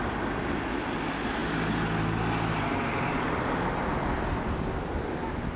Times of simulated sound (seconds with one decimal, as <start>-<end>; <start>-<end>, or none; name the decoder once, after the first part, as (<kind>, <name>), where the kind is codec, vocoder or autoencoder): none